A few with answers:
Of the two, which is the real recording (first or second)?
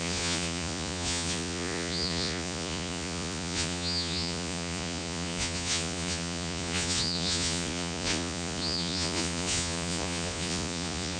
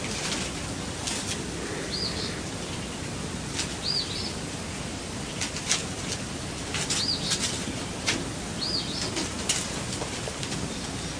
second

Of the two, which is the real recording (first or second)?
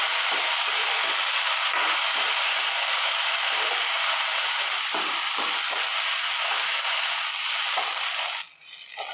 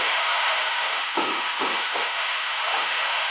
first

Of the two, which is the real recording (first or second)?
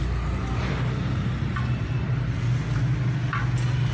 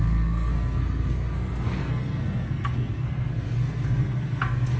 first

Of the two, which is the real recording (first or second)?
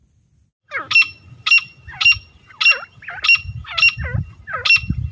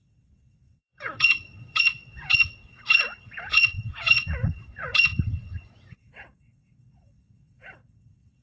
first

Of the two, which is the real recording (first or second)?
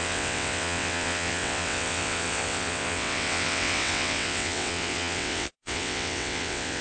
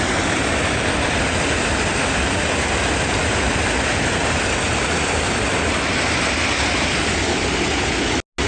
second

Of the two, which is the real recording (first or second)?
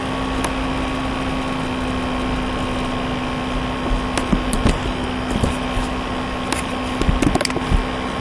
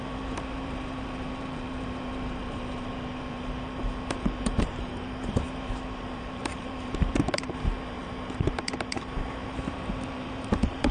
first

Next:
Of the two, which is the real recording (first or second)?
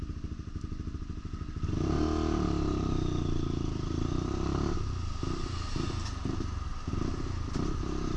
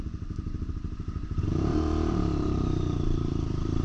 first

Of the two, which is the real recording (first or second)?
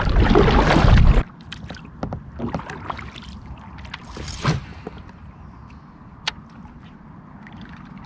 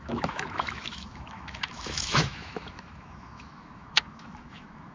first